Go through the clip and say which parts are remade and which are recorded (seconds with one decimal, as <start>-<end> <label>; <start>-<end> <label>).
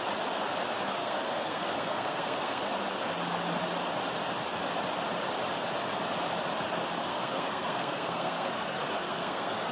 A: 0.0-1.0 recorded; 1.0-2.6 remade; 2.6-7.0 recorded; 7.0-9.7 remade